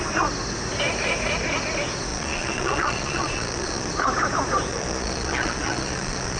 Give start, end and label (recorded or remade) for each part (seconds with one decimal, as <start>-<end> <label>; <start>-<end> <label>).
0.0-2.1 recorded; 2.1-3.9 remade; 3.9-4.7 recorded; 4.7-6.4 remade